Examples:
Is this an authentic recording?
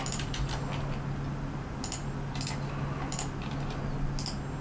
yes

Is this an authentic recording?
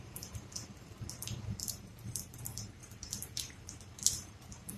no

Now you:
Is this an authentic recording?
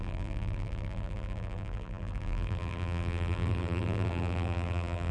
no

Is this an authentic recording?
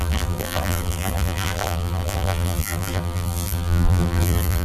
no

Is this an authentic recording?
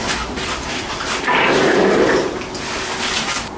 yes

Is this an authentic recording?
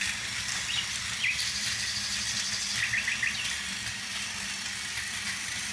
yes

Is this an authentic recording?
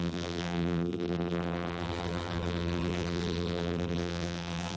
no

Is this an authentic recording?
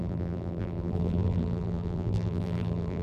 no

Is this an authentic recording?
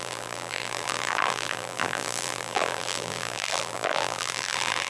no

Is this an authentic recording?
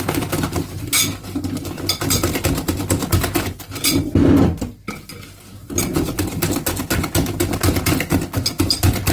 yes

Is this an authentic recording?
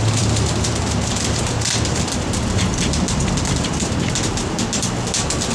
no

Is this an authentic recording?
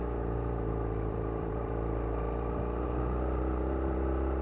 no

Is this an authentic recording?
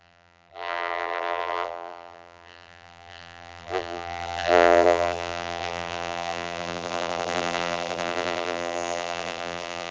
no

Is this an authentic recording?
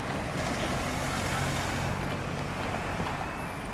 yes